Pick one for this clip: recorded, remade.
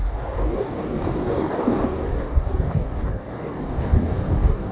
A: remade